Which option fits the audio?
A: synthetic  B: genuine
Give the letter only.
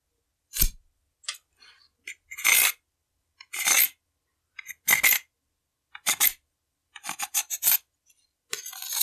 B